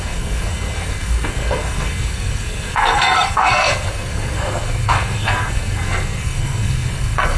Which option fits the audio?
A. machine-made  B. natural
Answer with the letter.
A